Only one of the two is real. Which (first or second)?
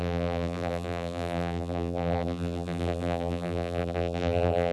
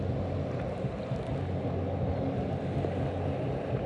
second